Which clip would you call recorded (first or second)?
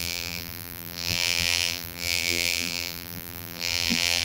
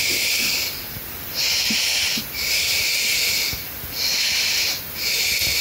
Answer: second